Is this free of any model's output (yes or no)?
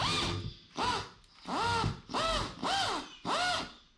yes